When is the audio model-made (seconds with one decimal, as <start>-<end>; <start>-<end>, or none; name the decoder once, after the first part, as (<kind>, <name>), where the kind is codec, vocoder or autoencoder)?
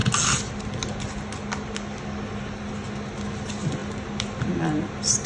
none